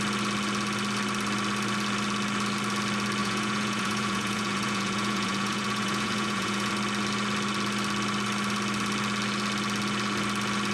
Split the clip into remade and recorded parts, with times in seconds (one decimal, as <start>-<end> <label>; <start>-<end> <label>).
0.0-3.2 recorded; 3.2-6.7 remade; 6.7-10.7 recorded